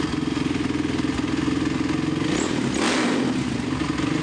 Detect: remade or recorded recorded